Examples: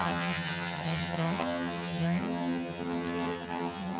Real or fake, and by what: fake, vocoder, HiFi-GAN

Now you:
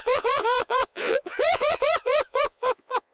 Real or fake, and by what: fake, vocoder, Vocos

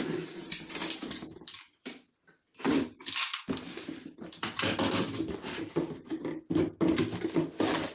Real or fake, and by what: real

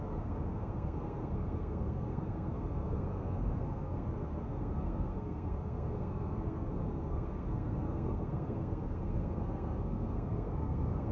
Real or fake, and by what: fake, codec, SNAC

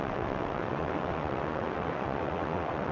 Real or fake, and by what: fake, vocoder, WaveNeXt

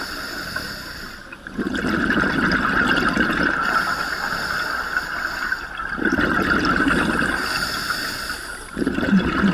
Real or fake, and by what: real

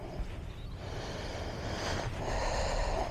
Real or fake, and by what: real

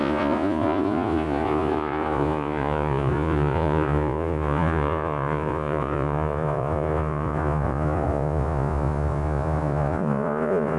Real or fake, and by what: fake, vocoder, Vocos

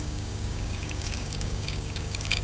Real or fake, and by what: fake, codec, DAC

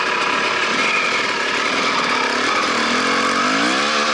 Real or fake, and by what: real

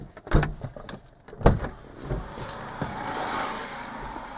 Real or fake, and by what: real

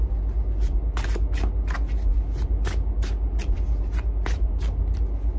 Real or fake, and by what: real